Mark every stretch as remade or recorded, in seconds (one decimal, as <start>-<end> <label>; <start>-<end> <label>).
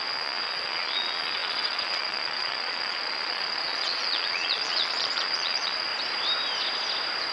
0.0-5.9 remade; 5.9-7.3 recorded